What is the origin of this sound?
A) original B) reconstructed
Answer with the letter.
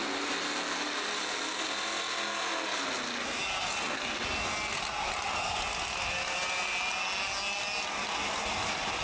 A